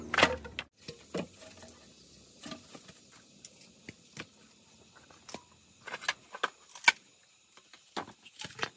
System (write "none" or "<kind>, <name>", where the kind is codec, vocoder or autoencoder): none